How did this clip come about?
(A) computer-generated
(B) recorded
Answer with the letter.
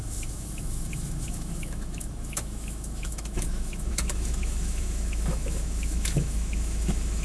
A